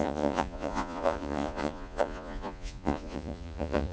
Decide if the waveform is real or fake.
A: fake